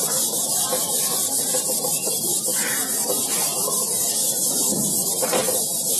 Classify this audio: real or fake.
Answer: fake